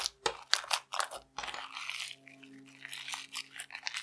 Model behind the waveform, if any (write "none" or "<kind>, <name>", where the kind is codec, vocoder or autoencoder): none